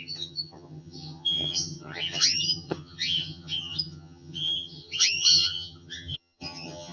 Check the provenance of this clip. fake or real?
fake